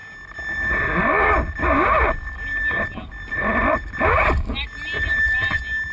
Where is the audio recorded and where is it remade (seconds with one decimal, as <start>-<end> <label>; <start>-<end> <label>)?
0.0-5.9 recorded